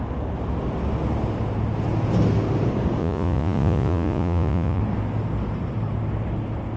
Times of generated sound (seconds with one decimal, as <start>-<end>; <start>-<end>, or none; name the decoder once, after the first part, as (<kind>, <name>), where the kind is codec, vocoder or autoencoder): 3.0-4.8 (vocoder, Vocos)